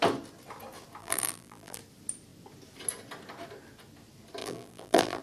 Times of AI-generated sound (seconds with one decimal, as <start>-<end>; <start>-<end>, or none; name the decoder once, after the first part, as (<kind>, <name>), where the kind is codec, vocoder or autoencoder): 1.0-1.8 (vocoder, BigVGAN v2); 4.4-5.2